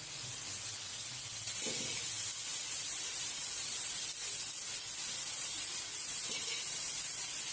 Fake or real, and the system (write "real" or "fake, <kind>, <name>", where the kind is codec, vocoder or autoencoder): real